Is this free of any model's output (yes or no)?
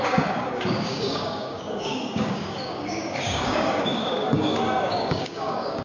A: no